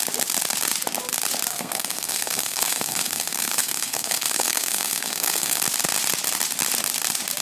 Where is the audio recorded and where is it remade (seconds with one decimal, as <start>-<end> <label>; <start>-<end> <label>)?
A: 0.0-1.5 recorded; 1.5-5.6 remade; 5.6-7.4 recorded